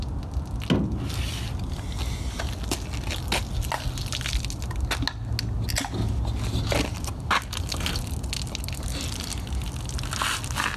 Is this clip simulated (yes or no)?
no